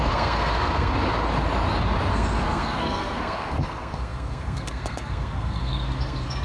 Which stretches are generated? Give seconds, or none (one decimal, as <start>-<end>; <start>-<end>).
0.0-0.9; 2.1-6.4